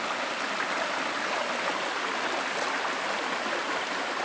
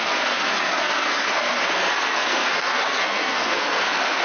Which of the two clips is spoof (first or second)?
second